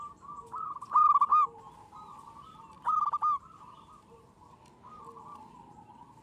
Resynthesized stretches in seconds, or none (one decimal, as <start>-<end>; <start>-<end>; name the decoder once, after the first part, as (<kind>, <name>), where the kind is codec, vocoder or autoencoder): none